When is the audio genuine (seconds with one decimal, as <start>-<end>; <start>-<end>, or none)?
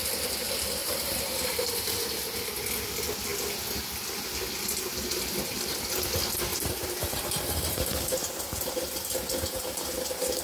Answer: 0.0-0.8; 2.1-6.5